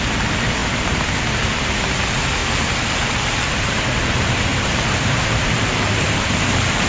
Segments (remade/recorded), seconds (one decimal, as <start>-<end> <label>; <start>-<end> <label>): 0.0-2.4 recorded; 2.4-4.0 remade; 4.0-4.5 recorded; 4.5-6.9 remade

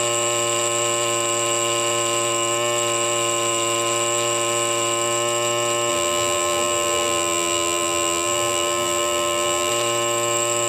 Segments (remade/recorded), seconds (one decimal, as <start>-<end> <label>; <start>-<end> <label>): 0.0-5.9 recorded; 5.9-9.7 remade; 9.7-10.7 recorded